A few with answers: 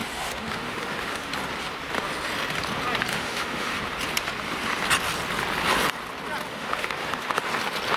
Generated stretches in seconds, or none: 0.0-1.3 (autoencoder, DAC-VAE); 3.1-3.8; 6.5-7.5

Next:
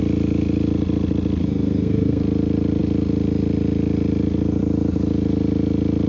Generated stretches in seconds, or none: 1.4-2.2 (codec, SNAC)

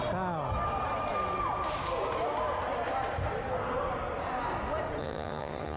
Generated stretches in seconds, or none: 5.0-5.8 (vocoder, HiFi-GAN)